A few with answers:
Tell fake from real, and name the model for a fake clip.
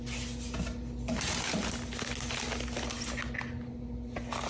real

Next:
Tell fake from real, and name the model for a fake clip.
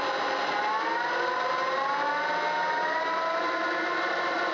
real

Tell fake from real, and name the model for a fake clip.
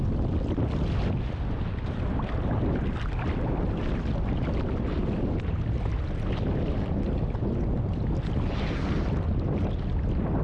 real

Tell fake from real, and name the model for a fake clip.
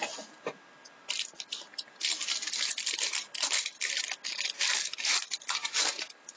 real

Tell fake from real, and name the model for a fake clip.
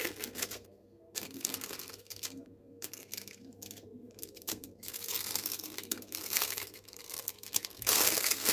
fake, codec, SNAC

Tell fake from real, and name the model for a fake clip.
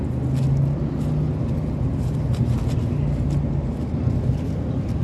real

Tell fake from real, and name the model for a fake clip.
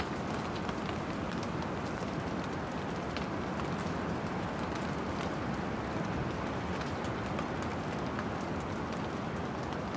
real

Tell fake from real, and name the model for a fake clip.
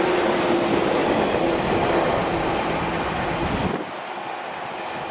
real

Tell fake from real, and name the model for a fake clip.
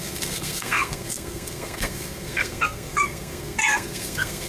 fake, codec, SNAC